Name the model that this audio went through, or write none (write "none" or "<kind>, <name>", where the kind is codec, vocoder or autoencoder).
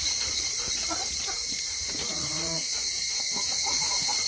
vocoder, Vocos